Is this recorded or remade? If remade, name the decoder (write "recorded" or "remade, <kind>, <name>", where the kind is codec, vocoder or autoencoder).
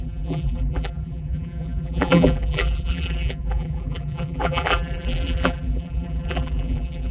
remade, vocoder, BigVGAN v2